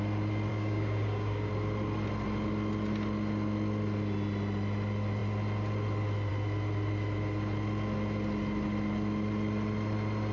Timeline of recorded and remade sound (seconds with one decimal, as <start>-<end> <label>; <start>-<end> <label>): 0.0-0.5 recorded; 0.5-1.5 remade; 1.5-10.3 recorded